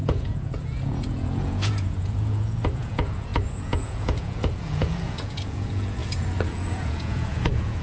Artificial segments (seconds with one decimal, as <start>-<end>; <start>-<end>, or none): 0.0-7.8